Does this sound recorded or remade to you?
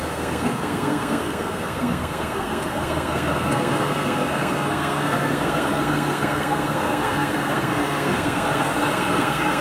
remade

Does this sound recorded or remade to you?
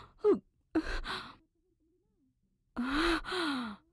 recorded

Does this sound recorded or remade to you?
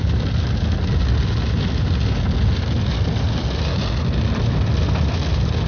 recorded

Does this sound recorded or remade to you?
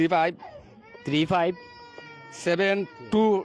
recorded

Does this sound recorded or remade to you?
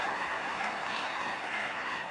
remade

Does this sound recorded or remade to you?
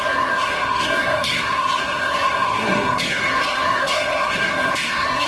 remade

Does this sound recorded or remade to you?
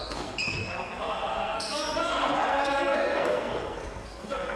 remade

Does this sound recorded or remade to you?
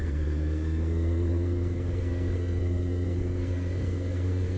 remade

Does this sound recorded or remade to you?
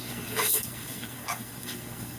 remade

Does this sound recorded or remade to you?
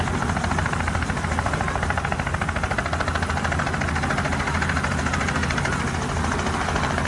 recorded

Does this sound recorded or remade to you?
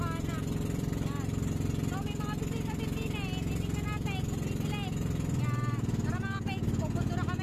recorded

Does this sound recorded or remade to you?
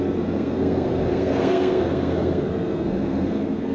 remade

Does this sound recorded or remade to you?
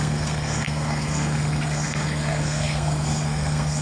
remade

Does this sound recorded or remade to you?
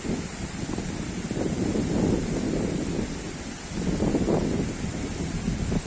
recorded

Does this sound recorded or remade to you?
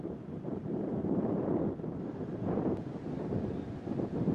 recorded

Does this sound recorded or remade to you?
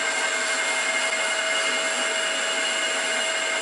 recorded